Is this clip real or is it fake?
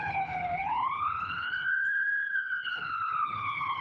fake